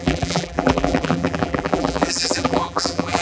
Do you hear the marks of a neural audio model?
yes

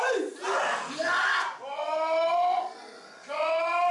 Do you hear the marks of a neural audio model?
no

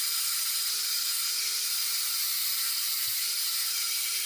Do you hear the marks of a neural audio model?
yes